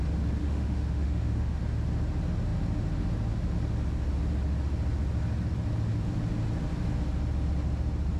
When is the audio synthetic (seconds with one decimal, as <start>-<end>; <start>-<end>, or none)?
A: 0.4-1.6